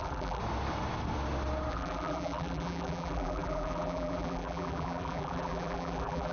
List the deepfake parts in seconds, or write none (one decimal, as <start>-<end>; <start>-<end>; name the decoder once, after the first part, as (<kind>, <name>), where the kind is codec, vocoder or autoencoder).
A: 0.0-0.4 (vocoder, BigVGAN v2); 1.7-6.3